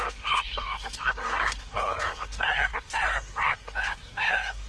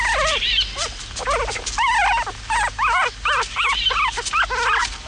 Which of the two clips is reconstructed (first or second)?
first